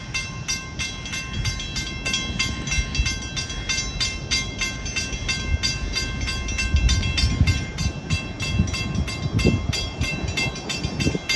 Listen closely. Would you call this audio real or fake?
real